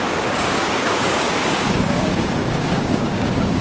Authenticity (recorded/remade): remade